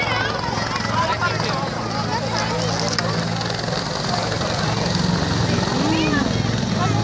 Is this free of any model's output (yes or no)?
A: yes